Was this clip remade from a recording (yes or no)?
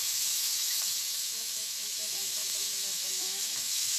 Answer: yes